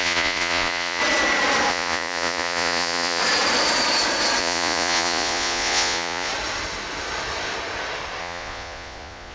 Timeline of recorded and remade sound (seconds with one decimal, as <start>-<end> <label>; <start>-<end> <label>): 0.0-1.0 remade; 1.0-1.7 recorded; 1.7-3.2 remade; 3.2-4.4 recorded; 4.4-6.3 remade; 6.3-8.2 recorded; 8.2-9.3 remade